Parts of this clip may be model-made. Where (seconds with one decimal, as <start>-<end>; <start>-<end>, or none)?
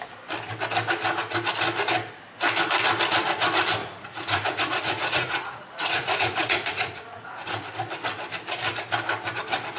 3.8-7.7